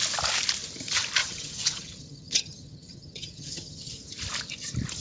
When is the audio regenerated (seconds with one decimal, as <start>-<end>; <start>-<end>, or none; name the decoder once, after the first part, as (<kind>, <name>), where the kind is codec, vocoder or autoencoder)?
1.2-3.9 (vocoder, HiFi-GAN)